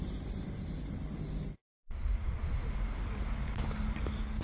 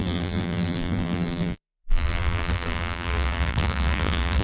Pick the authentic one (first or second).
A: first